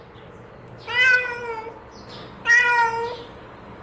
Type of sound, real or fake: real